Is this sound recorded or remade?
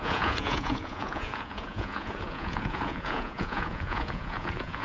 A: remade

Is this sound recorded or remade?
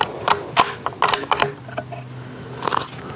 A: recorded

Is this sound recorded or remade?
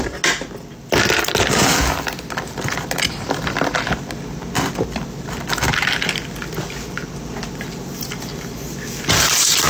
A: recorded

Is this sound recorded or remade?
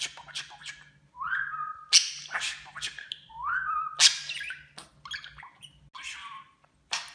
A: recorded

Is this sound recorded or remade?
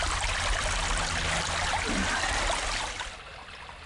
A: recorded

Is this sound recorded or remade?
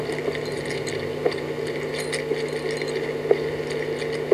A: recorded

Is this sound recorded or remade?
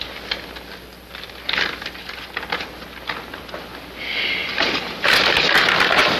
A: recorded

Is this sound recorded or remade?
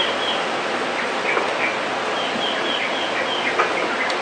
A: recorded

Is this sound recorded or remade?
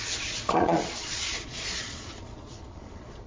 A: remade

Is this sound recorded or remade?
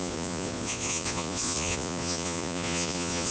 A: remade